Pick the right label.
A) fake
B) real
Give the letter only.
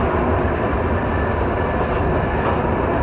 B